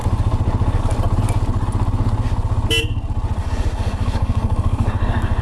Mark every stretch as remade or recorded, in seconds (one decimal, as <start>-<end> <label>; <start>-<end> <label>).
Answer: 0.0-3.4 recorded; 3.4-5.4 remade